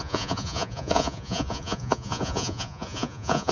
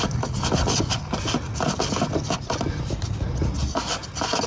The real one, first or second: second